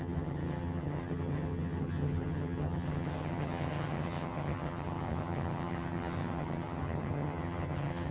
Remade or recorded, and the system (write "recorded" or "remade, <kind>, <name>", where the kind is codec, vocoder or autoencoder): remade, vocoder, HiFi-GAN